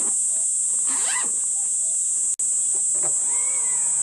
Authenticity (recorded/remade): recorded